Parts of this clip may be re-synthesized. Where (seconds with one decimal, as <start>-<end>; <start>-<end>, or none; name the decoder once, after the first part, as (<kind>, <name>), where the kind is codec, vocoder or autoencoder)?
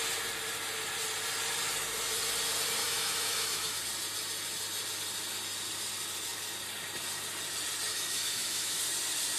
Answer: 2.8-3.8 (autoencoder, DAC-VAE); 7.9-8.8